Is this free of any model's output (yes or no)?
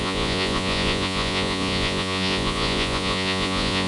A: no